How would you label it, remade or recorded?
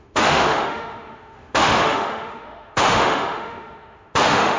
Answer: remade